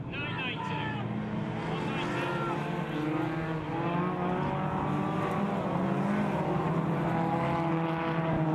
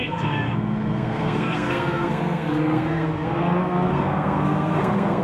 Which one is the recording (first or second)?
first